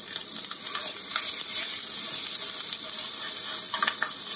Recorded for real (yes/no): no